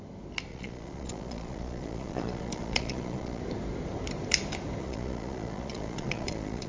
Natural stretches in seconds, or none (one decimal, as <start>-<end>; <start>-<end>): 0.0-0.5; 3.4-4.8